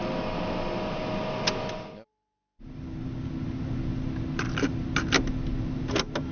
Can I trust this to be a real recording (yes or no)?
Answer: yes